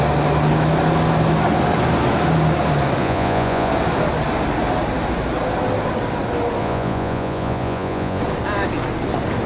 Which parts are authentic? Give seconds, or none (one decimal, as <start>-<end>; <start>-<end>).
0.0-3.0; 3.7-6.6; 8.2-9.5